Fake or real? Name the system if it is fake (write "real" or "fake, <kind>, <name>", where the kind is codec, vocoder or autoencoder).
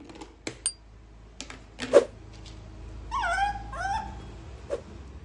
real